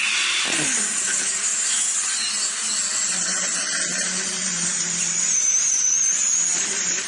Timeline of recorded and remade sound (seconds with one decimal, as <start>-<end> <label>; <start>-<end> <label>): 0.0-1.5 remade; 1.5-2.9 recorded; 2.9-7.1 remade